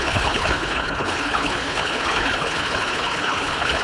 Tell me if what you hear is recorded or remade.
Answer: remade